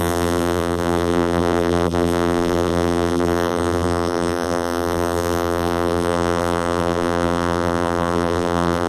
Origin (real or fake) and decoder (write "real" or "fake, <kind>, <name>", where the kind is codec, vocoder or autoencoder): fake, vocoder, BigVGAN v2